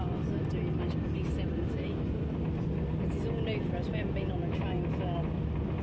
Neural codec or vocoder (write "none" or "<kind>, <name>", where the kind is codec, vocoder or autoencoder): none